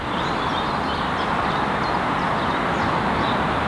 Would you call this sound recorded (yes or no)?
yes